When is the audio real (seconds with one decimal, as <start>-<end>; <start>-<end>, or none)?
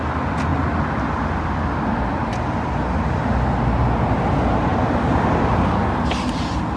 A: 0.0-6.8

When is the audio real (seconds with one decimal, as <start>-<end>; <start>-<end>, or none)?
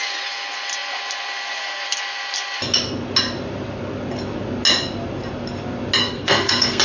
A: 0.0-6.0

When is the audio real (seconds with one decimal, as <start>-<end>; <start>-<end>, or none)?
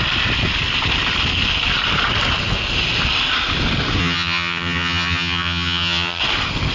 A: 0.0-4.0; 6.2-6.7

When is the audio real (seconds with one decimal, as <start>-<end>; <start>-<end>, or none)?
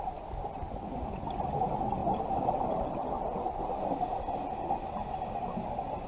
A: 0.0-6.1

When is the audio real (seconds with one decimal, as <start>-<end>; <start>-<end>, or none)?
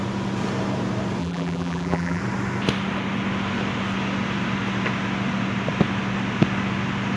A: 0.0-1.2; 2.2-7.2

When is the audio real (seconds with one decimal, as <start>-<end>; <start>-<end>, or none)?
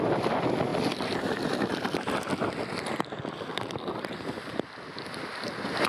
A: 0.0-5.9